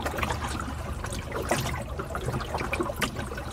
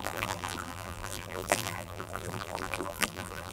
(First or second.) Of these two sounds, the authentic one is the first